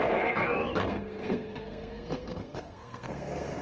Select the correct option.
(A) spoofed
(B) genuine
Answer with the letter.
A